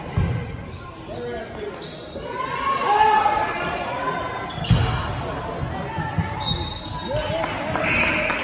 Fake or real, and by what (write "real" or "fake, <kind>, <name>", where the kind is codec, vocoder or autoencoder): real